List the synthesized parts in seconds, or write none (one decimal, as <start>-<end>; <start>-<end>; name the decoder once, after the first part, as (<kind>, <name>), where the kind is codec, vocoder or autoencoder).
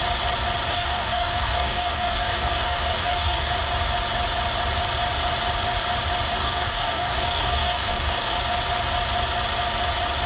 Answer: 0.7-3.5 (codec, DAC); 6.4-8.4